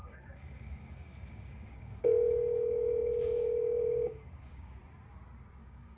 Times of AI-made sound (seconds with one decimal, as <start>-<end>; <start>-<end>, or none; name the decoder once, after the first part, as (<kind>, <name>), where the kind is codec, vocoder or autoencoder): 0.0-4.8 (codec, DAC); 5.6-6.0